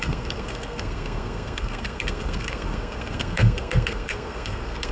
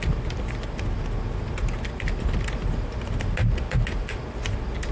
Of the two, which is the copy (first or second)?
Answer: first